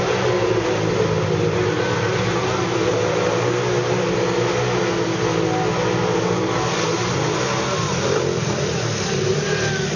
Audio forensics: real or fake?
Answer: real